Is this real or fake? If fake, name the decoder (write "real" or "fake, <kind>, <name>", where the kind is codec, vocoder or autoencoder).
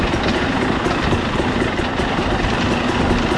real